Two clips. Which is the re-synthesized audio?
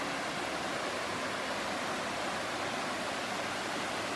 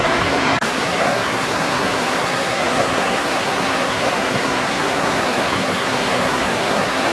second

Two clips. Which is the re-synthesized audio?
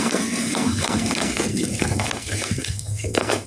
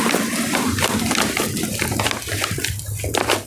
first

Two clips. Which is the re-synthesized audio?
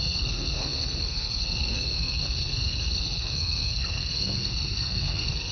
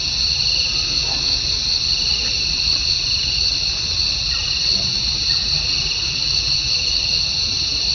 first